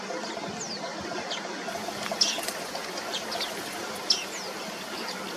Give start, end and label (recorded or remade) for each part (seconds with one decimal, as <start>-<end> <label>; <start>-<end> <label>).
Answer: 0.0-5.4 recorded

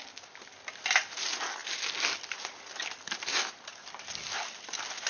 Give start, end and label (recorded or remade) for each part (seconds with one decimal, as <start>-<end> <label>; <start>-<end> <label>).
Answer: 0.0-5.1 recorded

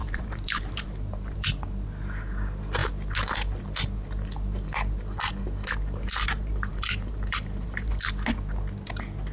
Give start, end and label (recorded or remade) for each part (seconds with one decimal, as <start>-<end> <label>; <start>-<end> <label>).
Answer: 0.0-1.7 remade; 1.7-6.3 recorded; 6.3-7.9 remade; 7.9-9.3 recorded

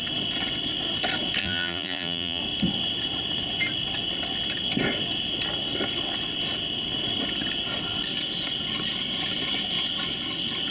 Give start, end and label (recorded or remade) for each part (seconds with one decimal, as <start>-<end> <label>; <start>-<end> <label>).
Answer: 0.0-1.4 recorded; 1.4-2.4 remade; 2.4-10.7 recorded